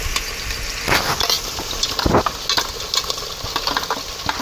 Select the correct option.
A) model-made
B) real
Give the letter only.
B